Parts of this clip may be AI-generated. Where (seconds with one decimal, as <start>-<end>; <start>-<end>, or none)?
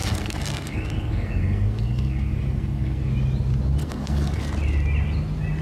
0.0-3.1; 3.8-4.4